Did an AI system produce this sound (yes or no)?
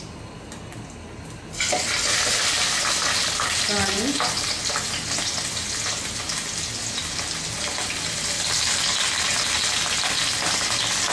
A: no